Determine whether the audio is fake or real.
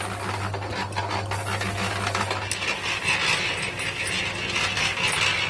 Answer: real